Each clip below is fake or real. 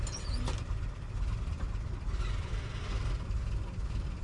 real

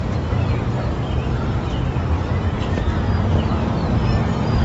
fake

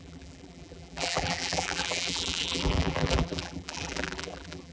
fake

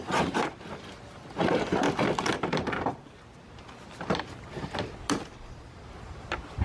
real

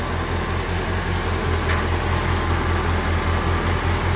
real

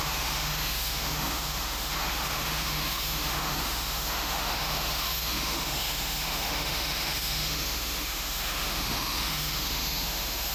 fake